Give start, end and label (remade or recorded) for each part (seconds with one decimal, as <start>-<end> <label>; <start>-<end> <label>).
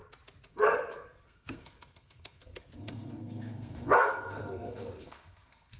0.0-0.5 recorded; 0.5-5.8 remade